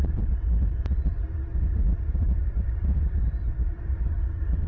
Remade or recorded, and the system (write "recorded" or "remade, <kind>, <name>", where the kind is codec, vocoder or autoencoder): remade, vocoder, BigVGAN v2